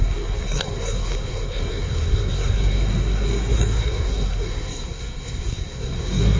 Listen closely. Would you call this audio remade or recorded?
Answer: remade